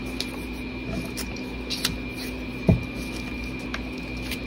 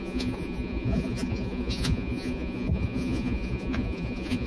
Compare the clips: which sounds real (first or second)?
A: first